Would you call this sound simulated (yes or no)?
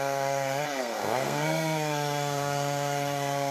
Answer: yes